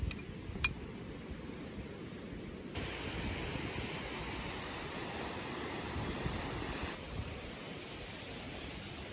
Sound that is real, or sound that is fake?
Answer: real